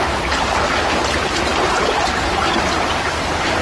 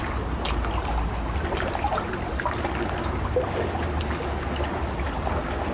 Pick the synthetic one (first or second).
first